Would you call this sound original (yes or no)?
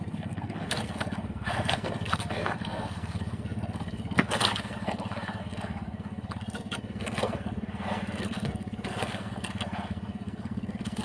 no